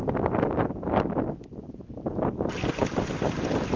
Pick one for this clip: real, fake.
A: real